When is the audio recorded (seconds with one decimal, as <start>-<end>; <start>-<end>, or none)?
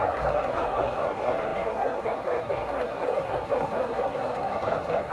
none